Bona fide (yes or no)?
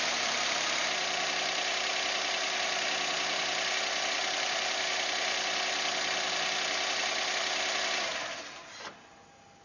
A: yes